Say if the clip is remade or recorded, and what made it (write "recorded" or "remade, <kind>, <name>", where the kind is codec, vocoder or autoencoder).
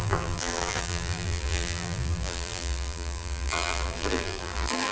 remade, vocoder, BigVGAN v2